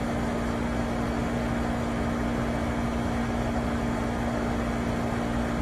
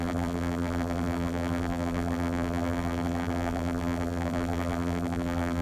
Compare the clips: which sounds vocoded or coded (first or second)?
second